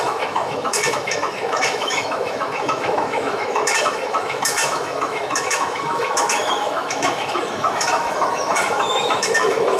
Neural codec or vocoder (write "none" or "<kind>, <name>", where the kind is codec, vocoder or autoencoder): autoencoder, DAC-VAE